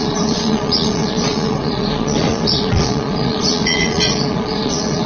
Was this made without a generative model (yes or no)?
no